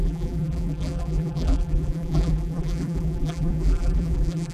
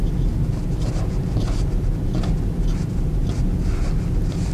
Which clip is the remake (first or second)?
first